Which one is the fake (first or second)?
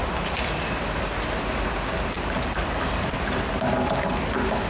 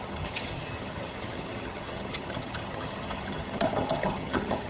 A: second